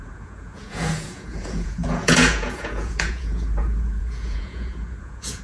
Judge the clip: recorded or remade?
remade